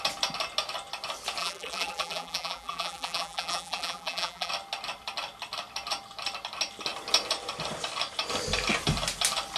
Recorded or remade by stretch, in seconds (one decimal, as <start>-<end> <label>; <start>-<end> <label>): 0.0-1.4 recorded; 1.4-4.5 remade; 4.5-9.6 recorded